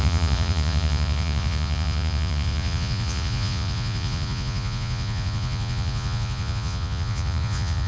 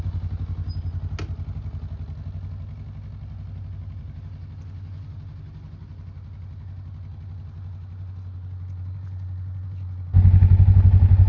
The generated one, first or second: first